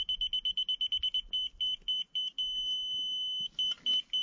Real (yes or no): yes